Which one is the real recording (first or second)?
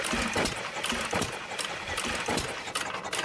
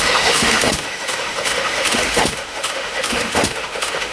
first